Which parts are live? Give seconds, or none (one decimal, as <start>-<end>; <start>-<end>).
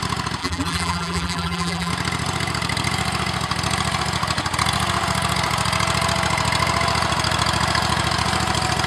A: 0.0-0.4; 1.9-8.9